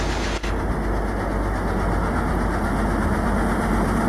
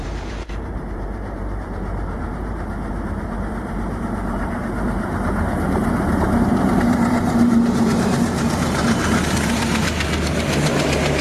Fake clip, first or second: second